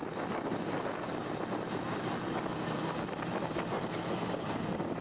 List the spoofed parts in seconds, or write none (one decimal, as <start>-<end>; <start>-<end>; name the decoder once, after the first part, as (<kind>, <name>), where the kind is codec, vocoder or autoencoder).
3.0-5.0 (vocoder, BigVGAN v2)